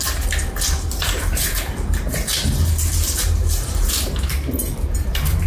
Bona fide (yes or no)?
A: no